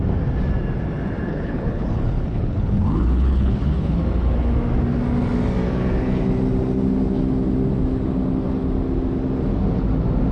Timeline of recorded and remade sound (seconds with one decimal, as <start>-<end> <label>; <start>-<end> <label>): 0.0-1.3 recorded; 1.3-4.0 remade; 4.0-10.3 recorded